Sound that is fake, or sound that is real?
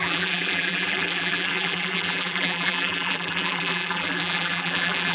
fake